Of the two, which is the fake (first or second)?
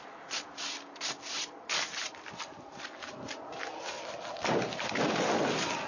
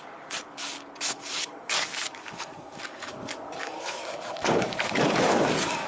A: second